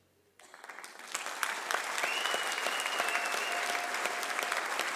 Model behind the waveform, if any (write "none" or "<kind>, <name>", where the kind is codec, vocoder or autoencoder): none